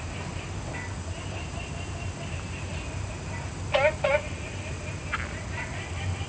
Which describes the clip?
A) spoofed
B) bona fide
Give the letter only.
B